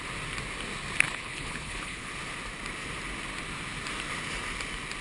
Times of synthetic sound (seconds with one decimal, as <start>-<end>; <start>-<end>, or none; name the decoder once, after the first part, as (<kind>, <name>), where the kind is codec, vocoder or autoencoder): 1.1-2.1 (codec, HILCodec)